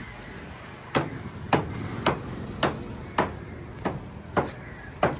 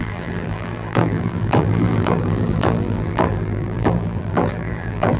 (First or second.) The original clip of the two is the first